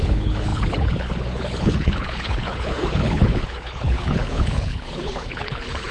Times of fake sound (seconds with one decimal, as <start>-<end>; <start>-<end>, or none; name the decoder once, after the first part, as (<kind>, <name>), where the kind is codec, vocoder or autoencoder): 0.0-5.9 (codec, HILCodec)